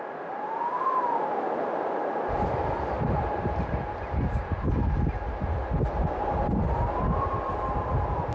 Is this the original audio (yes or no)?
yes